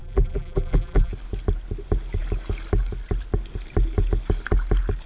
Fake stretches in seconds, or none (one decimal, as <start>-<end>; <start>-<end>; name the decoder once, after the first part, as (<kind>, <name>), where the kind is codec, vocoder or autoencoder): 0.0-1.1 (vocoder, BigVGAN v2)